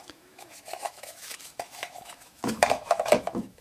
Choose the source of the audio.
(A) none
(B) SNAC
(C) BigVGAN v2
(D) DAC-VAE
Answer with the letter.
D